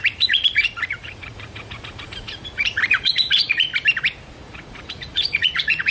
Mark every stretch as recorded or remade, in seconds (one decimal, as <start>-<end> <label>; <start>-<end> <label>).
0.0-3.7 remade; 3.7-4.3 recorded; 4.3-5.9 remade